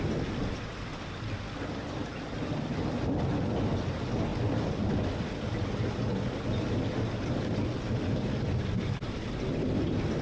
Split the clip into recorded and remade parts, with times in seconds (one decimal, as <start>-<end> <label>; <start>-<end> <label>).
0.0-10.2 recorded